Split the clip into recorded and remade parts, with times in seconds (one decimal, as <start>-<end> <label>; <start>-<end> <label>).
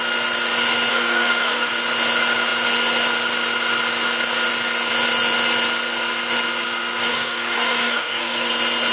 0.0-0.9 recorded; 0.9-1.7 remade; 1.7-7.1 recorded; 7.1-8.5 remade; 8.5-8.9 recorded